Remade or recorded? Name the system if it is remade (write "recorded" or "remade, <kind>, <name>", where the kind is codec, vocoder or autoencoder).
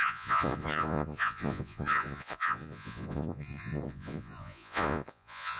remade, vocoder, Vocos